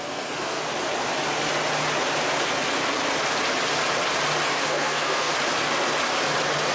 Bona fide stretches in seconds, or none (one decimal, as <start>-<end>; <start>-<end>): 0.6-4.6; 5.3-6.7

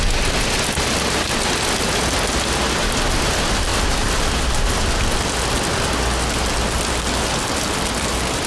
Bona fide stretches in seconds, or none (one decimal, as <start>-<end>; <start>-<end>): 0.0-8.5

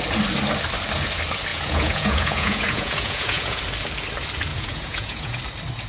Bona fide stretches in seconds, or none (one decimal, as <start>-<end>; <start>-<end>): 0.0-1.5; 3.6-4.5; 5.4-5.9